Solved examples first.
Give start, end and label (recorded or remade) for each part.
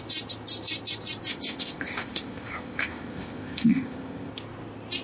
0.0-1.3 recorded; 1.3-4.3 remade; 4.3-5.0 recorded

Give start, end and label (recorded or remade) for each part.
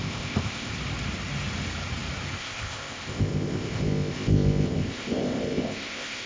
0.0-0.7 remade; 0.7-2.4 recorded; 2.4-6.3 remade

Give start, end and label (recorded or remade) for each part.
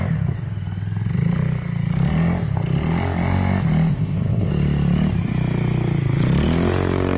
0.0-3.9 recorded; 3.9-4.5 remade; 4.5-7.2 recorded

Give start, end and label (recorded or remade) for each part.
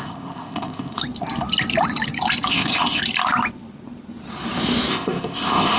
0.0-1.0 remade; 1.0-2.5 recorded; 2.5-3.0 remade; 3.0-4.9 recorded; 4.9-5.8 remade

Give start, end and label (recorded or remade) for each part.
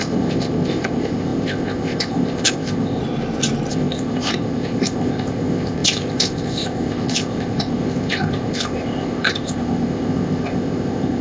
0.0-3.0 remade; 3.0-3.7 recorded; 3.7-11.2 remade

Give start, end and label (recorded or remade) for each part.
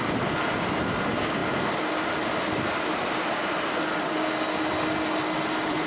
0.0-5.9 recorded